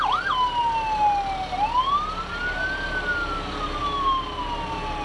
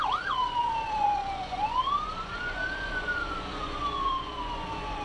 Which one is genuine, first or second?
first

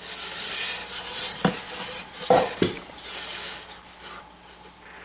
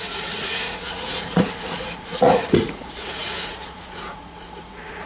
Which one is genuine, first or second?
first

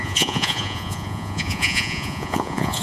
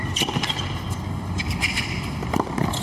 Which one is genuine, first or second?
second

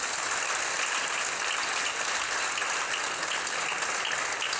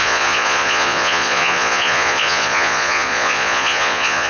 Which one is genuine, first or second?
first